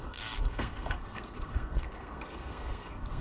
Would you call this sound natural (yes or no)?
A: no